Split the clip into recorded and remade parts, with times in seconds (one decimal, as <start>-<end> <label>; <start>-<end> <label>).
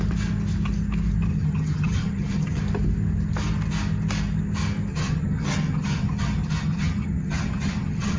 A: 0.0-1.3 recorded; 1.3-2.6 remade; 2.6-4.9 recorded; 4.9-8.2 remade